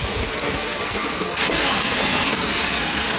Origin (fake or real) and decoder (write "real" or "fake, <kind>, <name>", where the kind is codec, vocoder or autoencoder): fake, codec, SNAC